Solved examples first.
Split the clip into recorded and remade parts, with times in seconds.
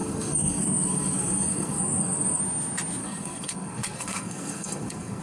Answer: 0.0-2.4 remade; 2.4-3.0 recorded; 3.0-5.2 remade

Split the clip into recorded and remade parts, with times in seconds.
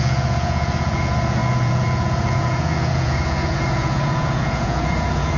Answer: 0.0-5.4 remade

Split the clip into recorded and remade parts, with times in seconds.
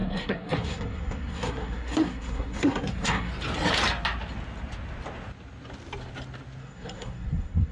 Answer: 0.0-3.3 remade; 3.3-6.6 recorded; 6.6-7.7 remade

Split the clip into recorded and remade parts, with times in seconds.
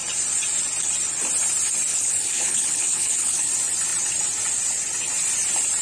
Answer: 0.0-1.9 recorded; 1.9-3.5 remade; 3.5-5.8 recorded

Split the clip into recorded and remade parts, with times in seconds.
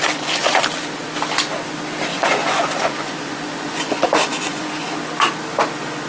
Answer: 0.0-0.6 remade; 0.6-2.1 recorded; 2.1-5.0 remade; 5.0-6.1 recorded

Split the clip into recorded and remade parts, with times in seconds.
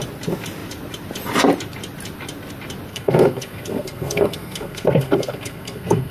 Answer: 0.0-2.9 recorded; 2.9-6.1 remade